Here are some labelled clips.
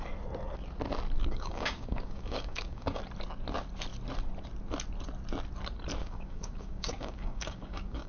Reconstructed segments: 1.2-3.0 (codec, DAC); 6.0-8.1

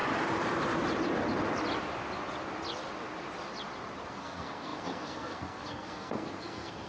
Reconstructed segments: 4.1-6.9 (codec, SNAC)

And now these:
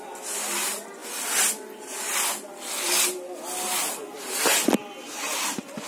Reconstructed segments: none

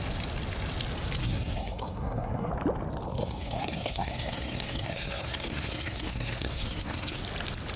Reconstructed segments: 1.2-2.5 (codec, SNAC); 3.1-7.2

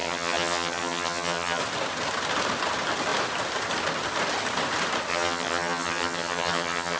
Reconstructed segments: 0.0-1.6 (vocoder, HiFi-GAN); 5.1-7.0

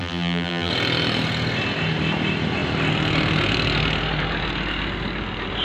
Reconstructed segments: 0.0-0.7 (vocoder, BigVGAN v2)

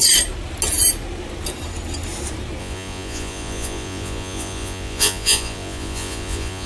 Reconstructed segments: 2.6-6.7 (vocoder, Vocos)